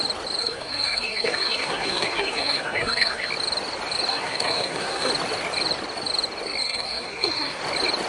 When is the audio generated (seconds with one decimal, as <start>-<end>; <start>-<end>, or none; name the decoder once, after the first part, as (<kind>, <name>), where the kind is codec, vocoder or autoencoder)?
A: 0.4-3.3 (codec, SNAC); 4.1-5.1; 6.6-7.6